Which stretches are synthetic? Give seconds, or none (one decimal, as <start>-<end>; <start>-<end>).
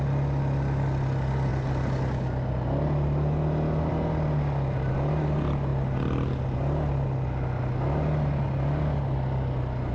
none